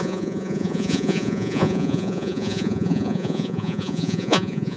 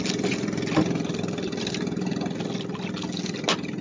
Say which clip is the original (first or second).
second